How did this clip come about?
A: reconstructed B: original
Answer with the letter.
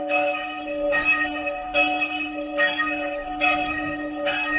A